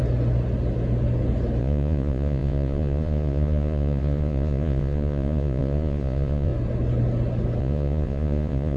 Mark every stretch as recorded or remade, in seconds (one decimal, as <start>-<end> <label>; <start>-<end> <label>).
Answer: 0.0-1.6 recorded; 1.6-6.5 remade; 6.5-7.6 recorded; 7.6-8.8 remade